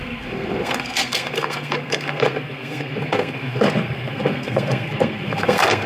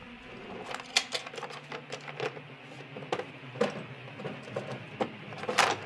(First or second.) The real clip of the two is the second